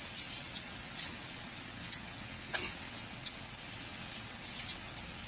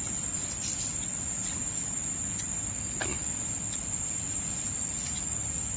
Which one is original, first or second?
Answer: second